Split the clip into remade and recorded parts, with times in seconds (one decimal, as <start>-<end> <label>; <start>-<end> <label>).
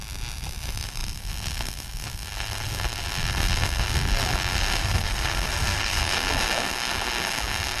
0.0-4.8 recorded; 4.8-6.0 remade; 6.0-7.8 recorded